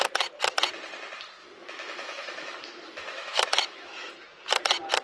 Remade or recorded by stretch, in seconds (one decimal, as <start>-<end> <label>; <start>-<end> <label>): 0.0-1.4 recorded; 1.4-4.1 remade; 4.1-5.0 recorded